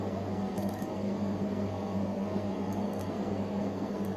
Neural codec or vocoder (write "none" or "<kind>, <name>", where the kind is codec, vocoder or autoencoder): codec, SNAC